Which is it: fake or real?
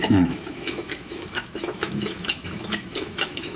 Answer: fake